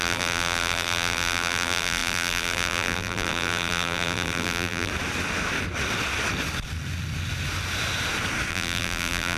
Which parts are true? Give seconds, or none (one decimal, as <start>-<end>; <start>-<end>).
4.9-8.5